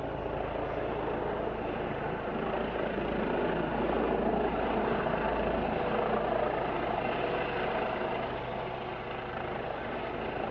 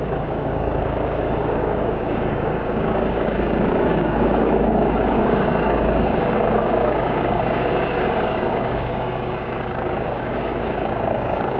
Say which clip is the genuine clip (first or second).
first